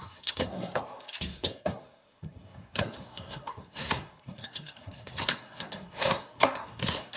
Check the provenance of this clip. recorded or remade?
remade